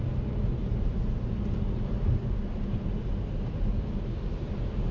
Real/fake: real